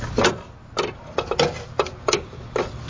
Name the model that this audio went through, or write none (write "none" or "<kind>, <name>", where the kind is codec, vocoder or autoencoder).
none